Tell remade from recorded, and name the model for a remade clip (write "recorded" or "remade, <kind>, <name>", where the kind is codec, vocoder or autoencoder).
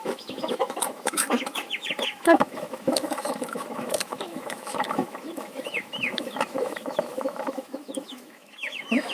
remade, autoencoder, DAC-VAE